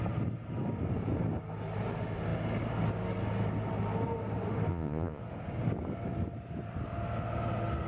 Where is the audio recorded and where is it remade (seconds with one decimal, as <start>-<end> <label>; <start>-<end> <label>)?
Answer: 0.0-4.7 recorded; 4.7-5.2 remade; 5.2-7.9 recorded